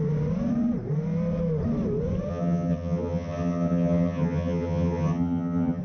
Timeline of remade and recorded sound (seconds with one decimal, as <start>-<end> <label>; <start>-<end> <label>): 0.0-2.3 recorded; 2.3-5.8 remade